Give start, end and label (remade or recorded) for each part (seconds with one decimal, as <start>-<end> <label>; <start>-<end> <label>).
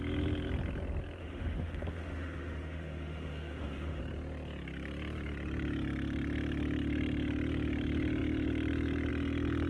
0.0-1.2 recorded; 1.2-4.0 remade; 4.0-9.7 recorded